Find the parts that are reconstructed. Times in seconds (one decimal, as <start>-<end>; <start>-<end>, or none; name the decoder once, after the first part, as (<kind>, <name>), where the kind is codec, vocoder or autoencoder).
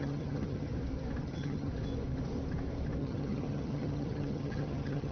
0.0-0.7 (vocoder, HiFi-GAN); 1.2-1.7; 3.0-5.1